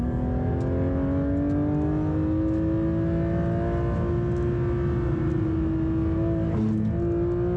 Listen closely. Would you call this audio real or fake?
real